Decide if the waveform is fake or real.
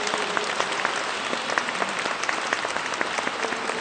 real